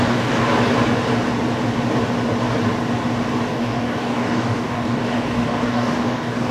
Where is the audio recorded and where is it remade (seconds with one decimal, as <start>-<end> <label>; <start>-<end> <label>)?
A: 0.0-0.4 remade; 0.4-3.5 recorded; 3.5-6.5 remade